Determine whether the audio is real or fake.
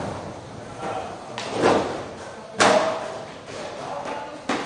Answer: real